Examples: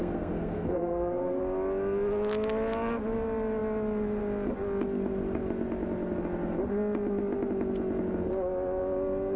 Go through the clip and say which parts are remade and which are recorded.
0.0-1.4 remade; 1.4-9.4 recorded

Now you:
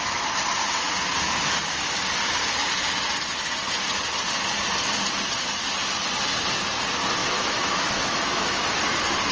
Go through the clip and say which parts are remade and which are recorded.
0.0-7.2 recorded; 7.2-8.8 remade; 8.8-9.3 recorded

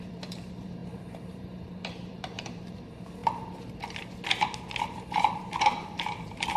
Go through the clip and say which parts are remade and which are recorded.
0.0-3.2 remade; 3.2-4.8 recorded; 4.8-6.6 remade

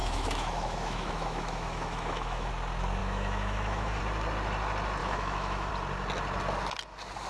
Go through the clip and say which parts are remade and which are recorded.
0.0-2.5 remade; 2.5-3.0 recorded; 3.0-4.0 remade; 4.0-5.0 recorded; 5.0-5.7 remade; 5.7-7.3 recorded

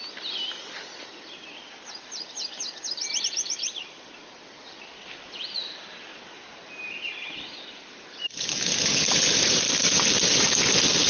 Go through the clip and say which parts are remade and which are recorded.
0.0-11.1 recorded

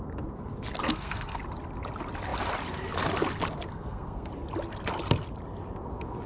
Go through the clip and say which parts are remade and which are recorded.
0.0-0.8 recorded; 0.8-1.4 remade; 1.4-3.7 recorded; 3.7-4.3 remade; 4.3-6.3 recorded

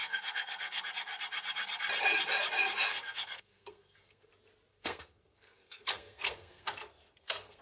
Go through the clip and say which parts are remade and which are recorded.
0.0-0.9 remade; 0.9-2.9 recorded; 2.9-4.3 remade; 4.3-4.7 recorded; 4.7-7.6 remade